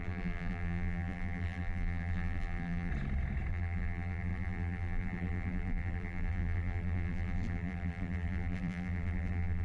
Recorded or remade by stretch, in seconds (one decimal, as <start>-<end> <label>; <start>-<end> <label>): 0.0-2.9 remade; 2.9-3.5 recorded; 3.5-9.6 remade